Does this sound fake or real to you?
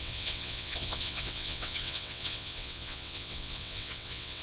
fake